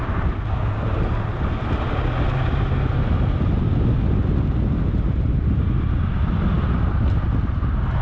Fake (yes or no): no